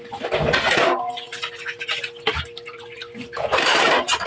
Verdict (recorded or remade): recorded